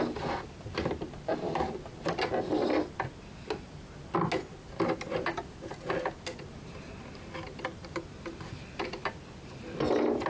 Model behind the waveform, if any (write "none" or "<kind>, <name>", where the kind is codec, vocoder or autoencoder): none